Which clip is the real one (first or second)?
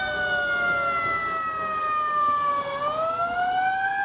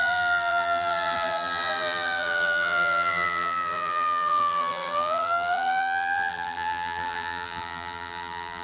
first